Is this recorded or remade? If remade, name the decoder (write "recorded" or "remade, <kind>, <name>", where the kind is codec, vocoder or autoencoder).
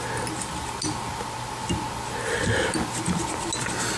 recorded